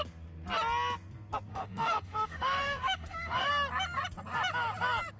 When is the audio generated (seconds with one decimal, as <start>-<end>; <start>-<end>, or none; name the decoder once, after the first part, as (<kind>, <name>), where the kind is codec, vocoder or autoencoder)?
1.5-3.5 (autoencoder, DAC-VAE)